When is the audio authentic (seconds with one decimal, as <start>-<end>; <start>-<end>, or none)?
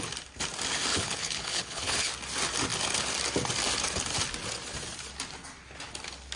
0.0-0.9; 2.1-6.4